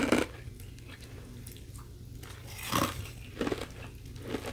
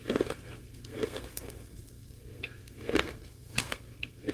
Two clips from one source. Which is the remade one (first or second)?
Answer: second